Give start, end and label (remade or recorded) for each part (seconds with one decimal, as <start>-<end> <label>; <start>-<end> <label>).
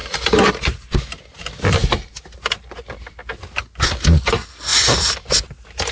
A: 0.0-5.9 recorded